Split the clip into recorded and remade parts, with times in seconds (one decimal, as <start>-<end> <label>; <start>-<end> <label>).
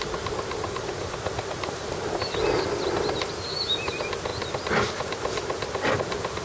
0.0-6.4 recorded